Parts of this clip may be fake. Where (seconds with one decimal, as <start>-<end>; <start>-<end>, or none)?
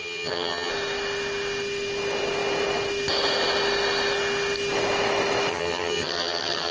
0.0-0.7; 5.5-6.7